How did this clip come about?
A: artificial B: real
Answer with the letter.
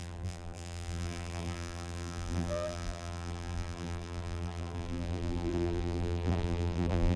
A